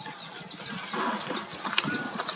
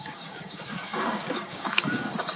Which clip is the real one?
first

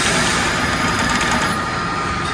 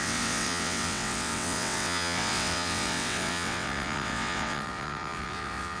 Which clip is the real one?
first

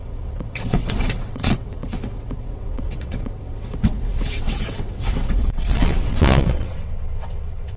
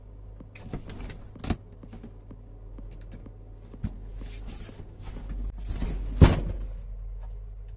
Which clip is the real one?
second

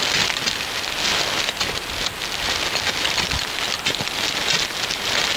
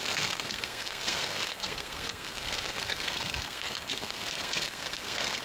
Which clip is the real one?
first